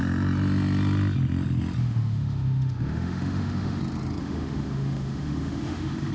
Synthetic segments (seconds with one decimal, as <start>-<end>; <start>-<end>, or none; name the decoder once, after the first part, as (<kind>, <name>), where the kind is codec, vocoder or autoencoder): 1.8-3.8 (autoencoder, DAC-VAE); 4.2-6.1